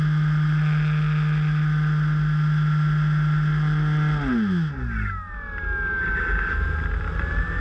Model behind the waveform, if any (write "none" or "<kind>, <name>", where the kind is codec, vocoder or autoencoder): none